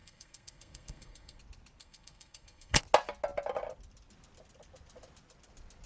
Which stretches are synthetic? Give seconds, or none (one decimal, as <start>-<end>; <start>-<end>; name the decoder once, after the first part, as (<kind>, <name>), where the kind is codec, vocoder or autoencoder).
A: 0.0-1.4 (codec, SNAC); 1.8-2.8